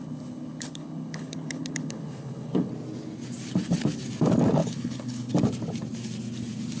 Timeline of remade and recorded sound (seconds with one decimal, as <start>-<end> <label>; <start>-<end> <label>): 0.0-2.7 remade; 2.7-4.6 recorded; 4.6-5.3 remade; 5.3-6.8 recorded